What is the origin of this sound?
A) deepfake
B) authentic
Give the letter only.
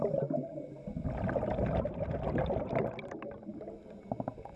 B